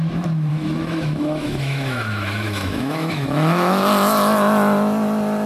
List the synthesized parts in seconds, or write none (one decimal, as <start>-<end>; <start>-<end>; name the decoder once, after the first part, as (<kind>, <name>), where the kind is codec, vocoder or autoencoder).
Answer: 0.5-3.8 (autoencoder, DAC-VAE)